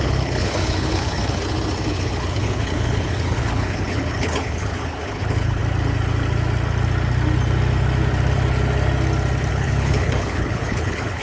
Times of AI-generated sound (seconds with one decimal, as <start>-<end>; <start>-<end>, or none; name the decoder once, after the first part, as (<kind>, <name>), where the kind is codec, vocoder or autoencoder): 0.0-1.4 (codec, HILCodec); 1.9-5.6; 9.5-11.2